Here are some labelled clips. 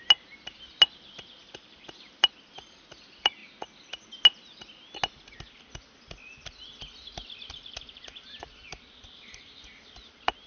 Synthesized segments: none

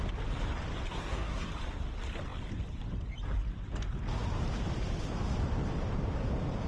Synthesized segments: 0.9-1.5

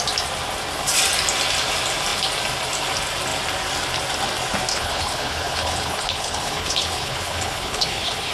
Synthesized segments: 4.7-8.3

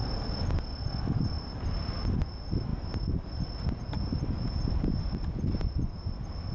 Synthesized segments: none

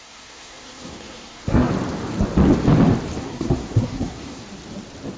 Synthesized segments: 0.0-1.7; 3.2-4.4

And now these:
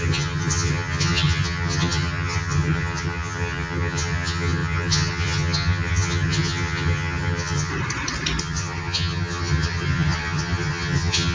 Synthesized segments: 0.0-7.7; 8.4-11.3

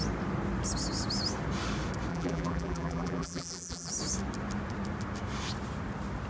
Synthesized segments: 2.1-3.9